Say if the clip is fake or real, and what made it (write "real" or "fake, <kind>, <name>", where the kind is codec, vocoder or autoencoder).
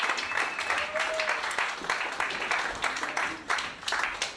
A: real